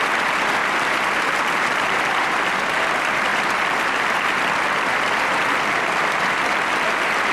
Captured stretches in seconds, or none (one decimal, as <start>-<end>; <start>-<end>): 0.0-7.3

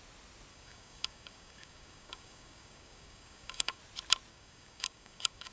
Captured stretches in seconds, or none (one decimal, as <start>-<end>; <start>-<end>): 0.0-0.5; 3.8-4.3

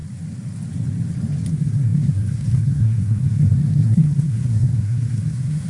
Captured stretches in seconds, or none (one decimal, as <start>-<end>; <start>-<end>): 0.0-1.5

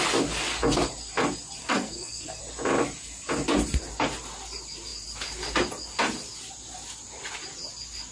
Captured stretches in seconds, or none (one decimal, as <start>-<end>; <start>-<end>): 0.0-1.6; 2.4-8.1

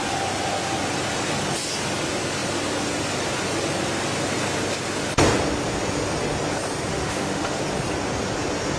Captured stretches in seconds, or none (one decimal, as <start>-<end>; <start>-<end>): 0.0-6.9; 7.6-8.8

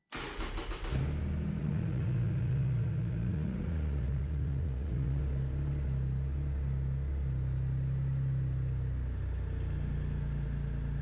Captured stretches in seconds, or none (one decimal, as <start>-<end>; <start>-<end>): 0.0-1.6; 5.2-11.0

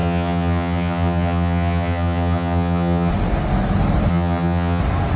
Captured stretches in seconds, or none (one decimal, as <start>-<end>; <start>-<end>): 3.1-4.1; 4.8-5.2